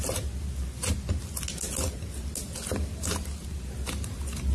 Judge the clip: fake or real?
real